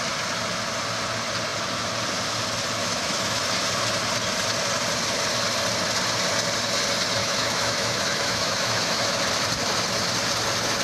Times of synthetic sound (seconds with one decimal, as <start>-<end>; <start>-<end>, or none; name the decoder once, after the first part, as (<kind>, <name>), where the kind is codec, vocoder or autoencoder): 2.8-3.4 (autoencoder, DAC-VAE); 7.2-9.2